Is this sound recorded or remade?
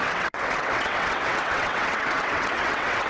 remade